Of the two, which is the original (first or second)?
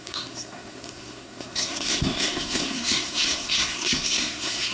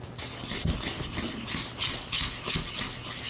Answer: second